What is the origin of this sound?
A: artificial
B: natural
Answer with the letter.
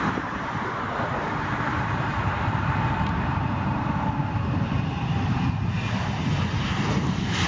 A